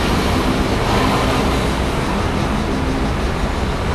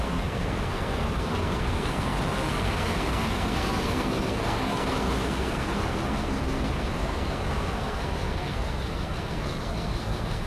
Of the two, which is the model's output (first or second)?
second